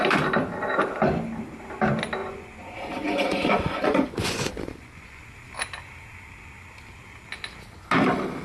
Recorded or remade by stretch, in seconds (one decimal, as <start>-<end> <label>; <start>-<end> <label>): 0.0-2.2 recorded; 2.2-5.2 remade; 5.2-8.4 recorded